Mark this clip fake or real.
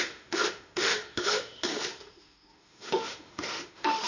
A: fake